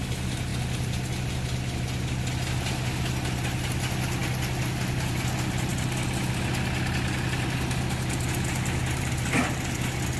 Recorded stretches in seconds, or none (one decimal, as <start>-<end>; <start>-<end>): 0.0-10.2